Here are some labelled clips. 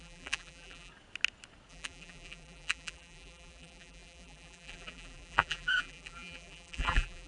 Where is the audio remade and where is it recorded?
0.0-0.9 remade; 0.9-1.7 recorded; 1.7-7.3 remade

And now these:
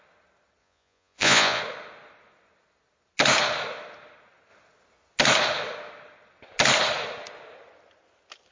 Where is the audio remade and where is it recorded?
0.0-0.6 recorded; 0.6-1.6 remade; 1.6-8.5 recorded

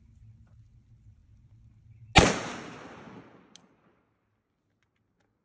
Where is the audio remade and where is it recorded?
0.0-5.4 recorded

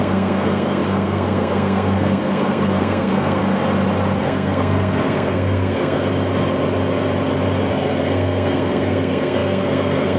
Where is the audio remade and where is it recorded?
0.0-3.4 remade; 3.4-4.2 recorded; 4.2-6.1 remade; 6.1-7.7 recorded; 7.7-10.2 remade

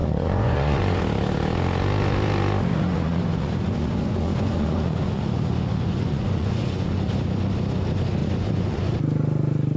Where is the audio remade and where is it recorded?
0.0-1.0 remade; 1.0-2.7 recorded; 2.7-7.0 remade; 7.0-8.2 recorded; 8.2-8.9 remade; 8.9-9.8 recorded